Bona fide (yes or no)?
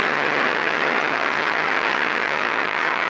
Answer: no